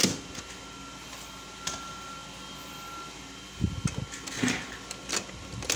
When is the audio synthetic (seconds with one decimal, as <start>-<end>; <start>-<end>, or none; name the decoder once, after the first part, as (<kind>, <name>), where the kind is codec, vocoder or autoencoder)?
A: none